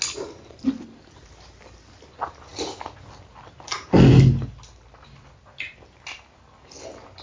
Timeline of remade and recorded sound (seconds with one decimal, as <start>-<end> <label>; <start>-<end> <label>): 0.0-7.2 recorded